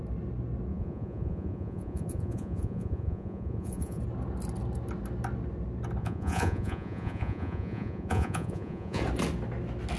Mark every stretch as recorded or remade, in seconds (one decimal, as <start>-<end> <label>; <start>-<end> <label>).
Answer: 0.0-0.7 recorded; 0.7-4.0 remade; 4.0-6.0 recorded; 6.0-9.0 remade; 9.0-10.0 recorded